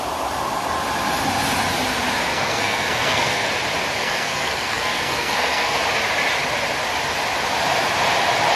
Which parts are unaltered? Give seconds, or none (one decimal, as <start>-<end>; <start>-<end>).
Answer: 0.0-2.3; 3.5-4.0; 5.8-8.6